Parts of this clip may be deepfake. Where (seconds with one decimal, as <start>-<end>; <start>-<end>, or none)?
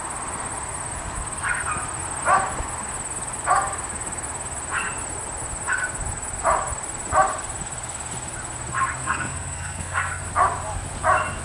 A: 9.0-10.3